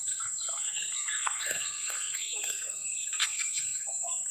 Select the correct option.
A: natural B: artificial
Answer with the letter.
B